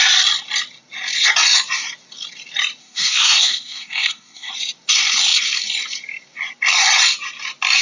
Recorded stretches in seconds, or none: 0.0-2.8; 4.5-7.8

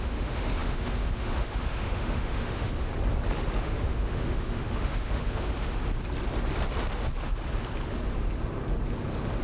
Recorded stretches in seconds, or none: 2.9-3.6; 5.8-9.4

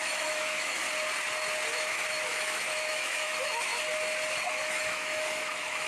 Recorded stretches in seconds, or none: 0.8-1.7; 3.7-4.5

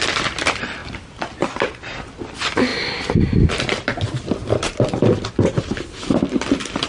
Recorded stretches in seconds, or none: 0.8-1.4; 4.4-5.4

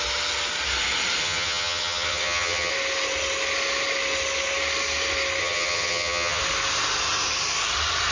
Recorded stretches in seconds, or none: 0.0-1.2; 2.7-5.4; 6.4-8.1

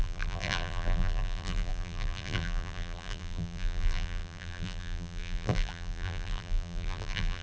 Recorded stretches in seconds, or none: none